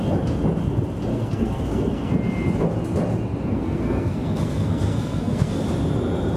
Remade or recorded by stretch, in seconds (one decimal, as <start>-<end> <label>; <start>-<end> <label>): 0.0-1.1 recorded; 1.1-2.1 remade; 2.1-3.5 recorded; 3.5-5.6 remade; 5.6-6.4 recorded